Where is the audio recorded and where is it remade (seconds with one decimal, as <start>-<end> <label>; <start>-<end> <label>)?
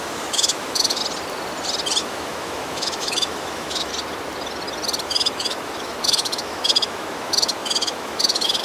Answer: 0.0-1.0 remade; 1.0-2.0 recorded; 2.0-3.9 remade; 3.9-5.0 recorded; 5.0-8.6 remade